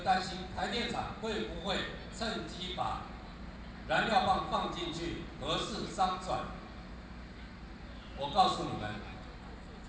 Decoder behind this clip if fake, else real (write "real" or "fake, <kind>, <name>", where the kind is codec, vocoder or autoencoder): real